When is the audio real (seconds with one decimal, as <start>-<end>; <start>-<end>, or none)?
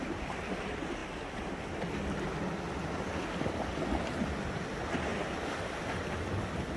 0.0-6.8